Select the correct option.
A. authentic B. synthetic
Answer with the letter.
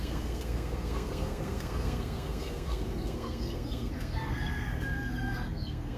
B